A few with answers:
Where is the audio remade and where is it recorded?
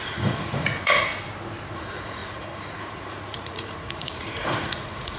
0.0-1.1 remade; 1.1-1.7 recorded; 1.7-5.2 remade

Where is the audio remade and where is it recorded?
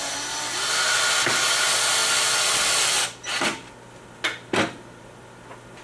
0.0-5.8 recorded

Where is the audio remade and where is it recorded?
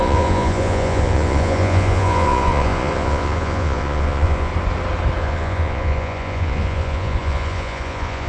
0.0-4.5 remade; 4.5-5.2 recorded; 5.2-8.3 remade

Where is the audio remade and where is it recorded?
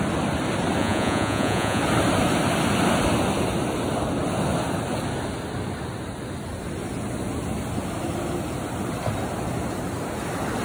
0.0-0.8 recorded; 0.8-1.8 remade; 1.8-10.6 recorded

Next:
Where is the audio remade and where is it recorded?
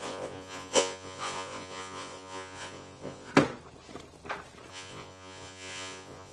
0.0-3.3 remade; 3.3-4.7 recorded; 4.7-6.3 remade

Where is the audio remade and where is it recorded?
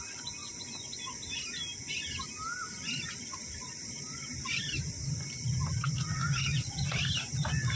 0.0-0.4 recorded; 0.4-1.0 remade; 1.0-7.8 recorded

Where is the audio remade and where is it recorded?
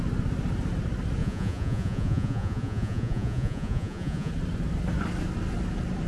0.0-1.2 recorded; 1.2-4.3 remade; 4.3-6.1 recorded